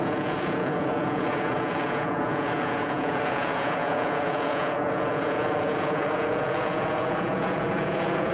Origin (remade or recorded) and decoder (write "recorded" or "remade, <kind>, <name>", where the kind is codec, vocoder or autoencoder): remade, vocoder, Vocos